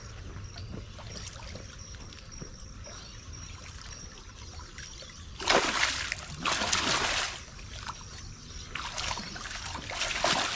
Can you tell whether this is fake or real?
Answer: real